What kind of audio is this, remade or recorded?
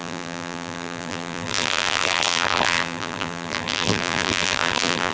remade